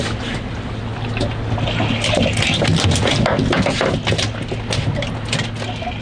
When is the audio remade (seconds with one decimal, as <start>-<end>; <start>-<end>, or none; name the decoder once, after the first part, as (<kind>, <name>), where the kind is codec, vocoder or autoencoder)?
none